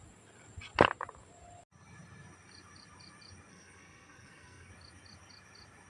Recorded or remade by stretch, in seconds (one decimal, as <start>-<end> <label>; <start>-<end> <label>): 0.0-3.5 recorded; 3.5-4.7 remade; 4.7-5.9 recorded